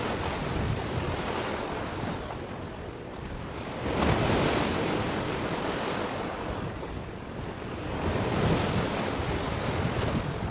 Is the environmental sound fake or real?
fake